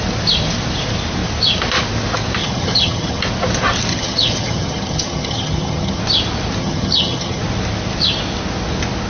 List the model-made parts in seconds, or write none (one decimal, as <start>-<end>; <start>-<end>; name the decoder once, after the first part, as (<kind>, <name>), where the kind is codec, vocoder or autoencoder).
2.4-3.2 (vocoder, HiFi-GAN); 3.9-6.0; 6.6-7.4